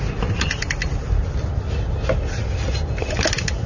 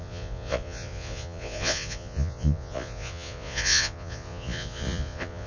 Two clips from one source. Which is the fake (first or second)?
second